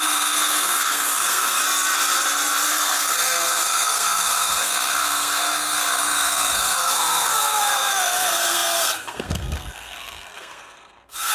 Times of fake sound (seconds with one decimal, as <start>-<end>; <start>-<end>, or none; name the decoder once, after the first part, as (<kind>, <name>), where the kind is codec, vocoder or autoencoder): 0.0-1.6 (codec, SNAC); 2.7-11.3